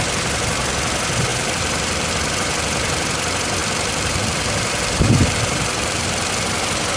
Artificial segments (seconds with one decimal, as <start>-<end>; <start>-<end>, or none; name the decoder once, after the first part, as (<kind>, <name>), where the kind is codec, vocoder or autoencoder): 1.3-2.1 (vocoder, BigVGAN v2); 3.6-6.3